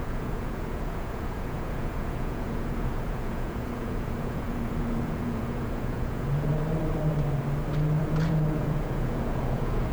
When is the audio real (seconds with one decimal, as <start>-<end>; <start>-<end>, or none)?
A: 6.5-8.0